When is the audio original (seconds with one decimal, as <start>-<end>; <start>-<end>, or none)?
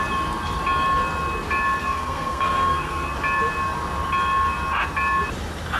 0.0-1.8; 3.1-5.8